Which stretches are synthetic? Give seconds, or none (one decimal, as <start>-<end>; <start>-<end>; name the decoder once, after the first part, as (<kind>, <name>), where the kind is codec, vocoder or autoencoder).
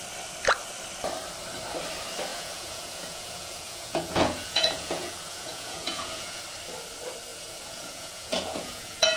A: 2.3-6.4 (vocoder, Vocos); 7.3-9.2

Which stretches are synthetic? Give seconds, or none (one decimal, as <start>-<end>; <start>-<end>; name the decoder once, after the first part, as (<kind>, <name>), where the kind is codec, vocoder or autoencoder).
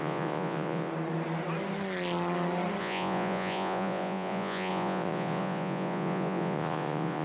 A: 0.0-0.9 (vocoder, Vocos); 2.8-7.2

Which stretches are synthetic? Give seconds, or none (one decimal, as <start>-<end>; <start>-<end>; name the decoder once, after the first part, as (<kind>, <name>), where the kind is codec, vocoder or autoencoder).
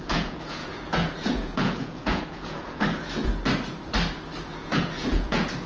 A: 0.0-3.3 (vocoder, Vocos); 4.5-5.7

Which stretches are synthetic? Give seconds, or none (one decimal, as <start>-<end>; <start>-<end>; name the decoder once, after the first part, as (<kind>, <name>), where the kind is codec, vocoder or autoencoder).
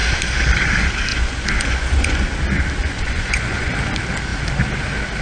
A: 1.1-2.2 (vocoder, Vocos); 2.8-3.7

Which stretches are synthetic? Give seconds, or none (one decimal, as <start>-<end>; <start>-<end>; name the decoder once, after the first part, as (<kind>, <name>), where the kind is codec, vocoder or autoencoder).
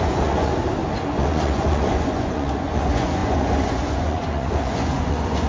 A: 0.0-0.5 (vocoder, Vocos); 1.1-5.5